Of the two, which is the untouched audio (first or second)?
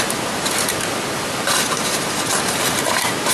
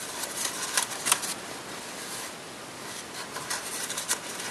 first